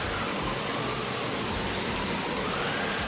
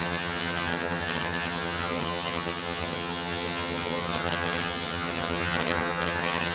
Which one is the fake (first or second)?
second